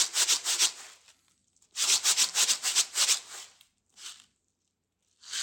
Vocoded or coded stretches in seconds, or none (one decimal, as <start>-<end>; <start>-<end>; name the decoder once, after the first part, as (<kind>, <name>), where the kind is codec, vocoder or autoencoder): none